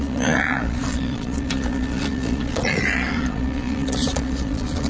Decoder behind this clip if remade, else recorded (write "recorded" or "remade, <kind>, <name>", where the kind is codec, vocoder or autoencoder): remade, vocoder, Vocos